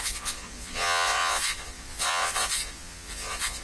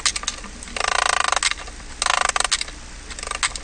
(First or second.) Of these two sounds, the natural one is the second